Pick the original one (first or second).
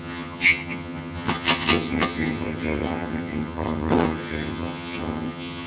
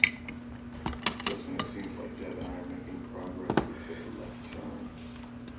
second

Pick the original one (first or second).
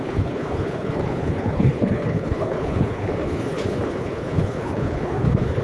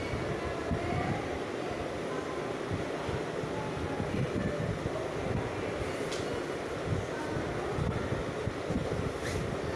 second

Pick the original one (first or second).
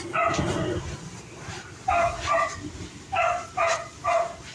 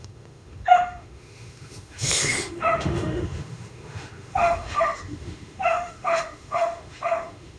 first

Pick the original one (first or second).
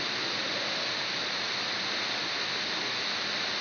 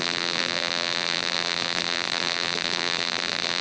first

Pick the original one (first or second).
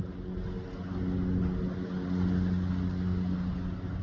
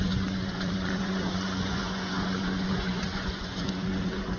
first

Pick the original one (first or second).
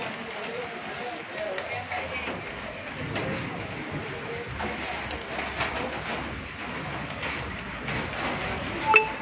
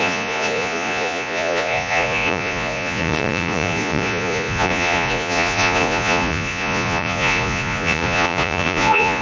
first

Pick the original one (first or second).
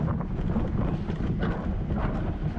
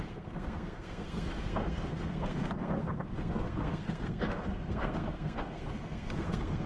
first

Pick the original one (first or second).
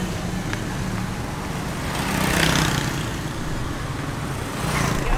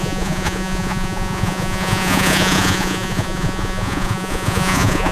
first